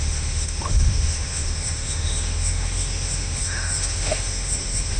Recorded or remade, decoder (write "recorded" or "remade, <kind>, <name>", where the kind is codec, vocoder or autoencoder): remade, autoencoder, DAC-VAE